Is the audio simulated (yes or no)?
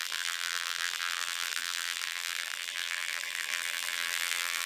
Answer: yes